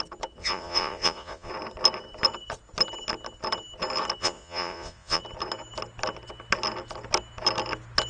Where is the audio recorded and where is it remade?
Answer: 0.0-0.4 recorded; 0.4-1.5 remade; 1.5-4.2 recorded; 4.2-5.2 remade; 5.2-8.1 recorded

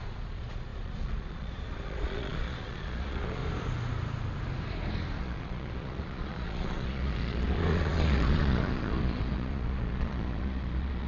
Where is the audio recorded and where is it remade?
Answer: 0.0-3.4 remade; 3.4-5.2 recorded; 5.2-11.1 remade

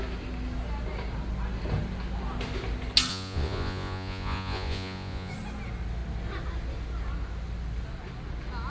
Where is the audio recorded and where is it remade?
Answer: 0.0-3.1 recorded; 3.1-5.3 remade; 5.3-8.7 recorded

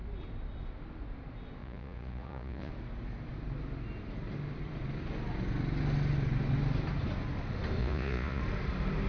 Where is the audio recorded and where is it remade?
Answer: 0.0-1.6 recorded; 1.6-2.7 remade; 2.7-7.8 recorded; 7.8-8.4 remade; 8.4-9.1 recorded

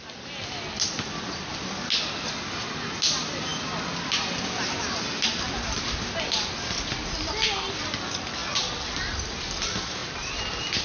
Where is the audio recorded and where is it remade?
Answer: 0.0-10.8 recorded

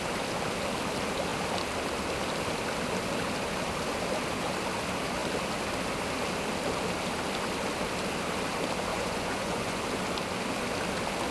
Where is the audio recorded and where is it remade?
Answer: 0.0-8.9 recorded; 8.9-9.8 remade; 9.8-11.3 recorded